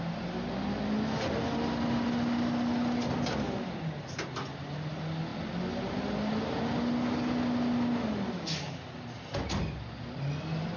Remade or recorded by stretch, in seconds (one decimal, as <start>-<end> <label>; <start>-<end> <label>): 0.0-10.8 recorded